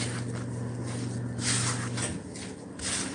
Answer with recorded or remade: recorded